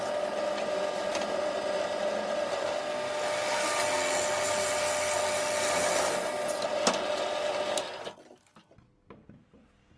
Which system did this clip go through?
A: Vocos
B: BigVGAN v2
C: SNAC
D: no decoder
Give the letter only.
D